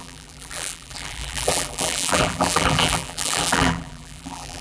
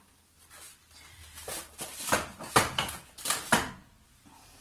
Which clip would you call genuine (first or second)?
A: second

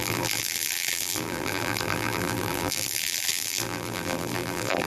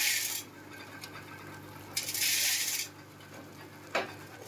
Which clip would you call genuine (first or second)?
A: second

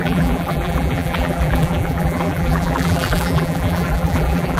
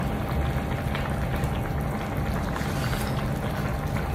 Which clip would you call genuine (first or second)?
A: second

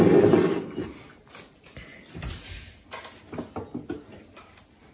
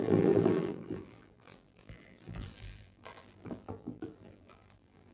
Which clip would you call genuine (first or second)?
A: first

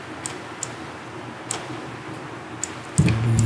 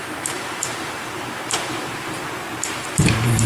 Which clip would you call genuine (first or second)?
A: first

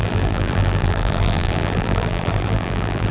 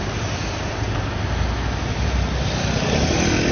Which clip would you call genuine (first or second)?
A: second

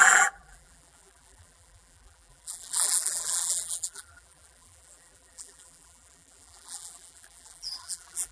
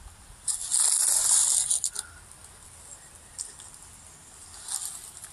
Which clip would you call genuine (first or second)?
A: second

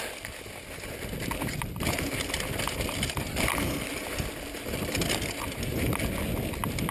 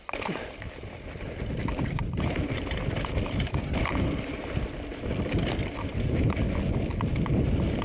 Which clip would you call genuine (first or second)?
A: first